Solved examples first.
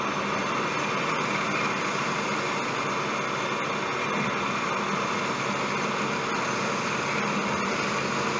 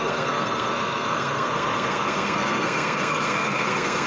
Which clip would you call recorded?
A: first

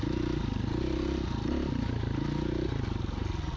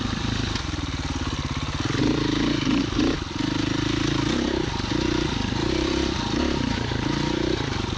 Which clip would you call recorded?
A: first